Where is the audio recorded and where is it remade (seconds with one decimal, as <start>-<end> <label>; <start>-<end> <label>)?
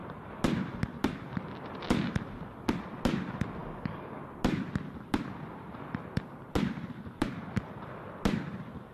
0.0-3.6 recorded; 3.6-4.2 remade; 4.2-8.9 recorded